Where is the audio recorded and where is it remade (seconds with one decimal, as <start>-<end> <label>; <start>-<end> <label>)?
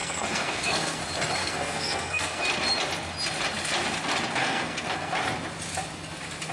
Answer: 0.0-1.0 remade; 1.0-1.4 recorded; 1.4-2.4 remade; 2.4-4.4 recorded; 4.4-5.1 remade; 5.1-6.5 recorded